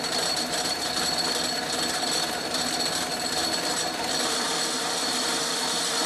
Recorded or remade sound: remade